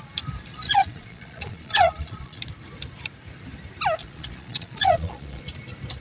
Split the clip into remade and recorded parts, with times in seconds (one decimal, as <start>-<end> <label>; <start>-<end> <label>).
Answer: 0.0-0.5 recorded; 0.5-2.4 remade; 2.4-4.0 recorded; 4.0-5.4 remade; 5.4-6.0 recorded